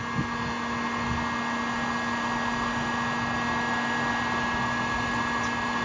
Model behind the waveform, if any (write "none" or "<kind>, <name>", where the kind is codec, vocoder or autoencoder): none